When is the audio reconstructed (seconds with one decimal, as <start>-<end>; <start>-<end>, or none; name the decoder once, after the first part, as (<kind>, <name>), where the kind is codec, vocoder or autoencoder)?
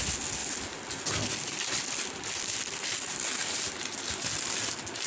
0.4-2.5 (vocoder, BigVGAN v2); 3.4-4.1